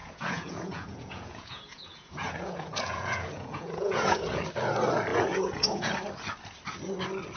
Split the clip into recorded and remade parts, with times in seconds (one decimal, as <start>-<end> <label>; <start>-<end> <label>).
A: 0.0-4.4 remade; 4.4-5.1 recorded; 5.1-5.9 remade; 5.9-7.4 recorded